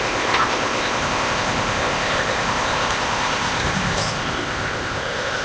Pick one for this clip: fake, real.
fake